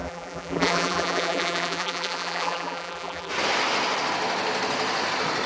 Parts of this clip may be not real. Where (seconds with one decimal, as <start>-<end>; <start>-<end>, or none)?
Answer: 0.0-3.3